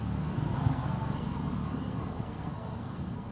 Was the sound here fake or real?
fake